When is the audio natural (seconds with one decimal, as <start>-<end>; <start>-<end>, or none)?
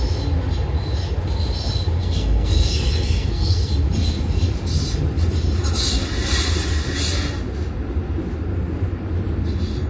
0.0-2.0; 3.7-9.9